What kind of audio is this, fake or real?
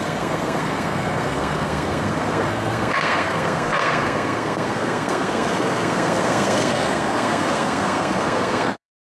fake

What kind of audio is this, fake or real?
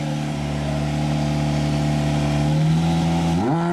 real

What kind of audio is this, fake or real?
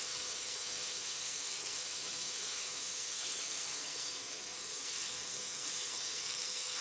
fake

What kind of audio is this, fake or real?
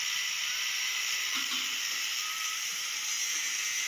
real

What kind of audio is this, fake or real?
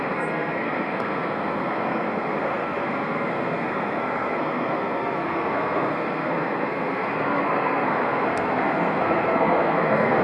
fake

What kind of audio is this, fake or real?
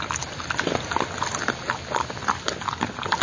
real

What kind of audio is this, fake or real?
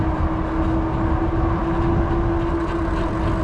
real